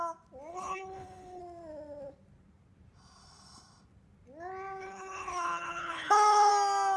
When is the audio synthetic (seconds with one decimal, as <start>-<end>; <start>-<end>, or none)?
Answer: 0.5-1.4; 4.8-6.5